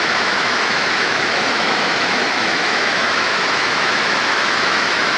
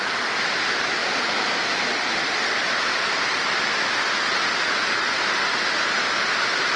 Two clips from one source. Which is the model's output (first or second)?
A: first